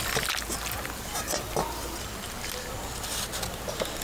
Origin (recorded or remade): recorded